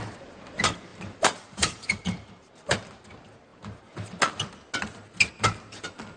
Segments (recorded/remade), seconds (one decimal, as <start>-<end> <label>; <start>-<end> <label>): 0.0-0.9 recorded; 0.9-2.5 remade; 2.5-3.5 recorded; 3.5-4.2 remade; 4.2-6.2 recorded